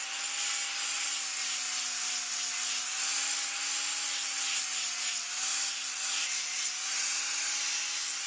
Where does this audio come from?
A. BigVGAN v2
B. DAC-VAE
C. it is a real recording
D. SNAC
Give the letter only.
C